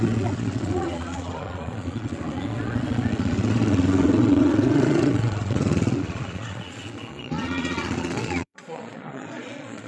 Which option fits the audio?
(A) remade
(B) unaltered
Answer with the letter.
A